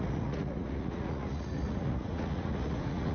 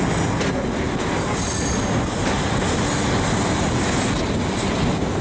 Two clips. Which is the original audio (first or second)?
second